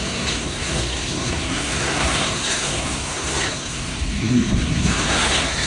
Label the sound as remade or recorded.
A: remade